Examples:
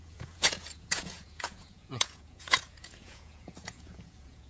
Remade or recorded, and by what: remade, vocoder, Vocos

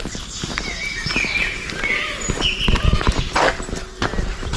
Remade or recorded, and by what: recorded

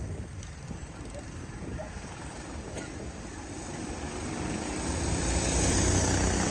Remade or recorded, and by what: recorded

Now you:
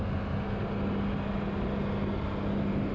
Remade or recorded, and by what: recorded